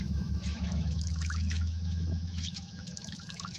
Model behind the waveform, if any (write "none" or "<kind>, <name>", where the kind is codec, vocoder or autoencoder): autoencoder, DAC-VAE